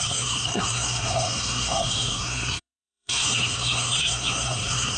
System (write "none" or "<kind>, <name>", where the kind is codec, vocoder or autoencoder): codec, SNAC